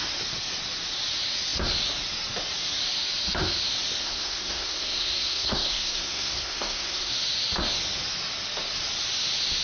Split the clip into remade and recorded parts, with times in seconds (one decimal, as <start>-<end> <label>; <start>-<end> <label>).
0.0-4.0 recorded; 4.0-7.1 remade; 7.1-9.6 recorded